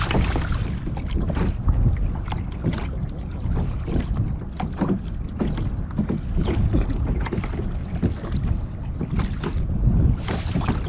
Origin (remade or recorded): recorded